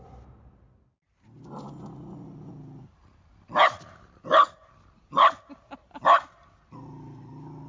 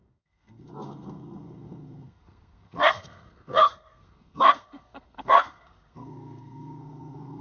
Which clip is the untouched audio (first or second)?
first